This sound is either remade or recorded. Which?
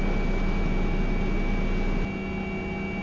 recorded